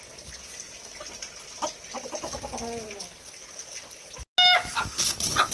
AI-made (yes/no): no